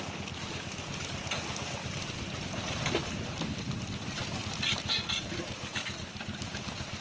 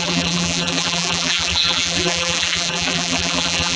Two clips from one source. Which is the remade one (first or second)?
second